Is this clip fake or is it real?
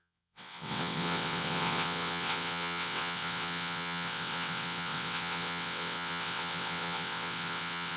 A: fake